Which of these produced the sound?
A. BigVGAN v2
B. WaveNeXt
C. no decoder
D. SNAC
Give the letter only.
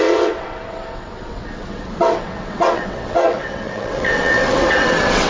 B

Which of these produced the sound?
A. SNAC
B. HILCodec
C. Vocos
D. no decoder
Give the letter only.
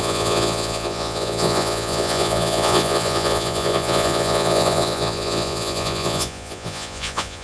C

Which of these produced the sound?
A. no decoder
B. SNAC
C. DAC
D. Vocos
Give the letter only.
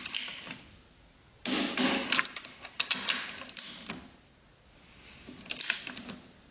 A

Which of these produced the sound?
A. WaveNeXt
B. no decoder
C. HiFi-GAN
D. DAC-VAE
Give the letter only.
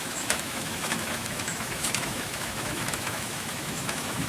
D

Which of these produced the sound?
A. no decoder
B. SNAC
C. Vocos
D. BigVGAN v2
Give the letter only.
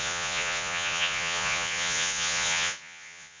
C